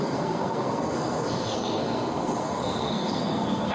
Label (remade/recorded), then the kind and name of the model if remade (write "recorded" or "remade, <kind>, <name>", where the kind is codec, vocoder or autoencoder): remade, codec, SNAC